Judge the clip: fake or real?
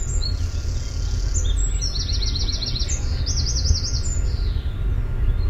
real